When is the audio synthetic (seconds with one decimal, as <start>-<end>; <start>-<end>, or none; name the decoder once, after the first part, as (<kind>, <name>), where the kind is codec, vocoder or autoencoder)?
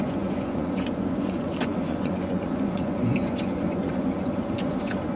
0.0-5.2 (vocoder, Vocos)